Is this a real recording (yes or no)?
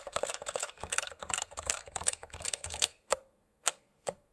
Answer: no